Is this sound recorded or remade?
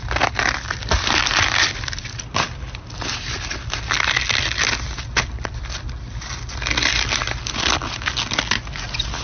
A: recorded